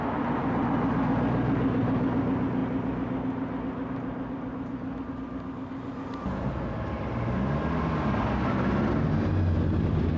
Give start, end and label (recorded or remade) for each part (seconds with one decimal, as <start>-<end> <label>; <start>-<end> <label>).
0.0-10.2 recorded